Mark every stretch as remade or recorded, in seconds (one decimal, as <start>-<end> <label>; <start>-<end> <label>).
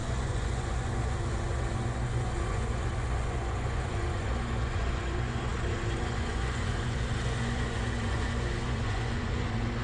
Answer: 0.0-9.8 remade